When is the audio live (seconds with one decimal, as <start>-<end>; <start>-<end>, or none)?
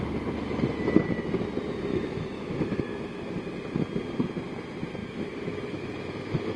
0.0-1.9; 3.4-5.0